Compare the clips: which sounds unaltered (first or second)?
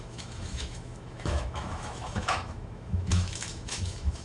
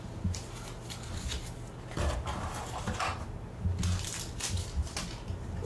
second